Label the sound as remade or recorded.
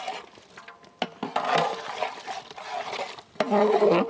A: recorded